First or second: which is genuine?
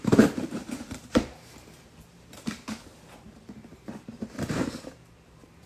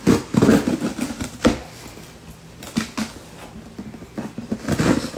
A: second